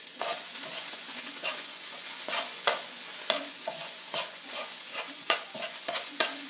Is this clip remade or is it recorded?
remade